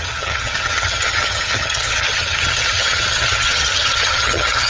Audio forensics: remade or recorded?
remade